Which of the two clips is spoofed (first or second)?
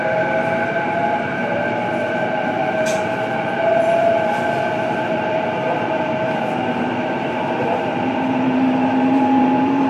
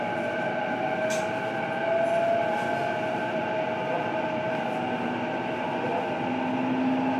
first